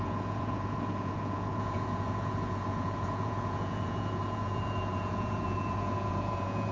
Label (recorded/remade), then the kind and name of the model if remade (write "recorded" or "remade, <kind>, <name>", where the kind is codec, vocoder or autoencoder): remade, vocoder, Vocos